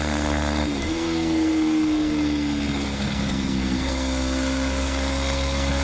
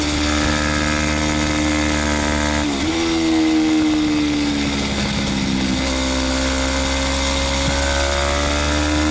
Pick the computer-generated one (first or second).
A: first